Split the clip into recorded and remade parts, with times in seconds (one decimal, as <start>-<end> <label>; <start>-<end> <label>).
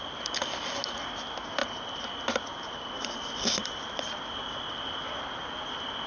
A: 0.0-1.6 recorded; 1.6-4.2 remade; 4.2-6.1 recorded